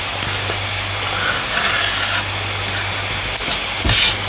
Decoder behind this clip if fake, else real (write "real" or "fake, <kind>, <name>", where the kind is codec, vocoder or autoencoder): real